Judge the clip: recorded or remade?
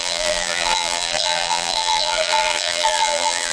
remade